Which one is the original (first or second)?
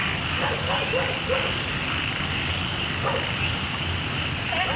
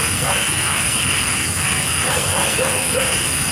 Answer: first